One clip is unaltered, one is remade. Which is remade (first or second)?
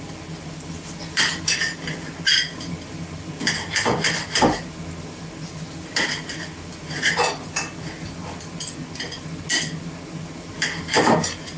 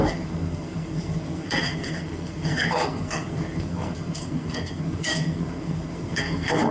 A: second